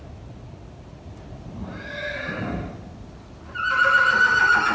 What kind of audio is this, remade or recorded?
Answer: recorded